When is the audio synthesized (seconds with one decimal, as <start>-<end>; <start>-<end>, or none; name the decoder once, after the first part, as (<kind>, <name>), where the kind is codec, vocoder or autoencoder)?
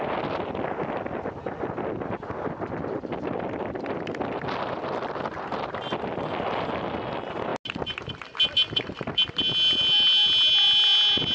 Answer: none